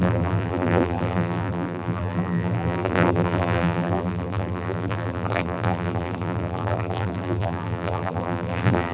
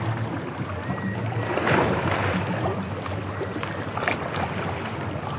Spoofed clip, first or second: first